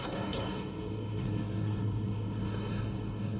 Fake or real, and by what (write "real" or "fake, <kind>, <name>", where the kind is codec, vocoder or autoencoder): fake, codec, SNAC